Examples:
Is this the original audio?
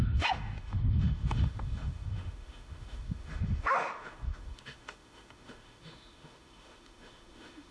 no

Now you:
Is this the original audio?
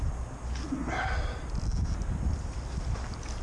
yes